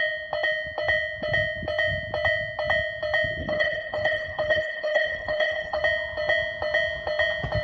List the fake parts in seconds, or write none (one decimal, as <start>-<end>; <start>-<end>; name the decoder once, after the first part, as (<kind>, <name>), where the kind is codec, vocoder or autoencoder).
3.4-5.8 (codec, HILCodec)